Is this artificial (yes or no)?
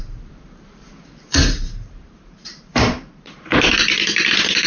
yes